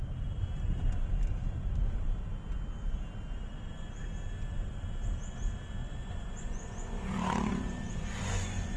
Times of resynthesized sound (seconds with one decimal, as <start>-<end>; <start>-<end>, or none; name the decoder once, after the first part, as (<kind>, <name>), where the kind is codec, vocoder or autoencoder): 5.8-8.8 (vocoder, Vocos)